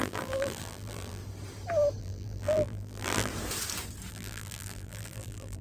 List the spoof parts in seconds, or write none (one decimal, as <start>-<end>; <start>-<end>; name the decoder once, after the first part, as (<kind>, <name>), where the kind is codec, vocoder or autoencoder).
0.0-1.2 (vocoder, BigVGAN v2); 2.0-3.3; 4.1-5.6

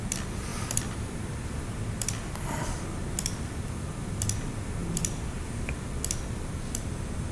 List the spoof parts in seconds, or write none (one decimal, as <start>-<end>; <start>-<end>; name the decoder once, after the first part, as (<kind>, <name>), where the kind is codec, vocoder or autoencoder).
0.5-1.3 (vocoder, BigVGAN v2)

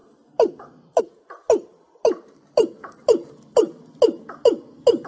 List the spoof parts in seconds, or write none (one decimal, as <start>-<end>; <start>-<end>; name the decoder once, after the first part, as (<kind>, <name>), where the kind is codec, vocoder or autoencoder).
0.0-1.0 (vocoder, BigVGAN v2); 1.7-3.7

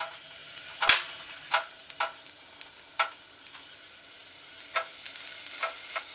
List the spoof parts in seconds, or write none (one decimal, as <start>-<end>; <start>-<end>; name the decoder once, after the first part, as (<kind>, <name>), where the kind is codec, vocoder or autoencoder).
none

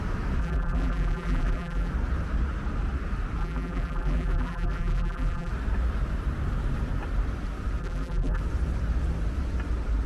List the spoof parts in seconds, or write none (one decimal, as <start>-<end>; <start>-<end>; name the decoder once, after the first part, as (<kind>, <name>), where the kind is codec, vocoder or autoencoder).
0.4-1.9 (vocoder, BigVGAN v2); 3.4-5.5; 7.8-8.4

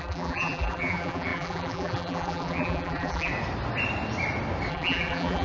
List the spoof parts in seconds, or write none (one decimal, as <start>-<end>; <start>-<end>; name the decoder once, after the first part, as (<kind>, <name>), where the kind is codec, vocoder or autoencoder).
0.0-3.3 (vocoder, BigVGAN v2); 4.7-5.4

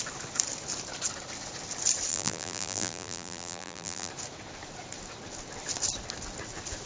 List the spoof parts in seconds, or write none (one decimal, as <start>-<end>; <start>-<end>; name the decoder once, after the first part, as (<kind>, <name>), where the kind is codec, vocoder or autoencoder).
2.1-4.1 (vocoder, BigVGAN v2)

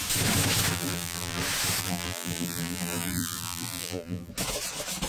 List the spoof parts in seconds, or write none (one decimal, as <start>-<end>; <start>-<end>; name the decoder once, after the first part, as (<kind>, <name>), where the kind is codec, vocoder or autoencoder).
0.7-1.4 (vocoder, BigVGAN v2); 1.8-4.3